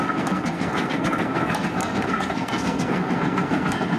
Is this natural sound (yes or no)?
no